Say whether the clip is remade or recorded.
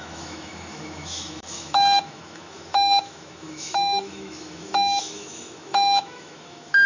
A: remade